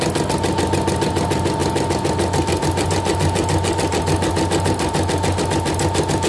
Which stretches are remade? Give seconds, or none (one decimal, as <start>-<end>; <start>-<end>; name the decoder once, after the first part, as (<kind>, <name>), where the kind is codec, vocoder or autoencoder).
none